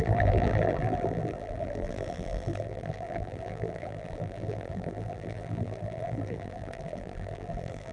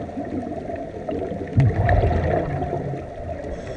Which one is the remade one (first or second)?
first